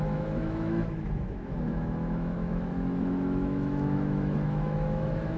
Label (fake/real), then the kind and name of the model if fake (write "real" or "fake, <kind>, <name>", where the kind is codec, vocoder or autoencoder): fake, autoencoder, DAC-VAE